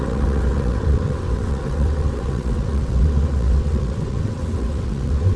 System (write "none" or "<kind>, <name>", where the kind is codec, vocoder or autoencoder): vocoder, WaveNeXt